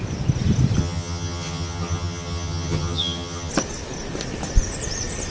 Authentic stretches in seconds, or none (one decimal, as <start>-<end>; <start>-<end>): 0.0-0.8; 3.5-5.3